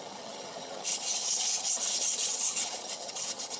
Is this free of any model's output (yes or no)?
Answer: no